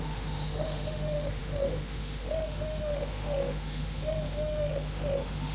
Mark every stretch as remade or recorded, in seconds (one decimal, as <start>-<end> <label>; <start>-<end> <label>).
0.0-5.5 remade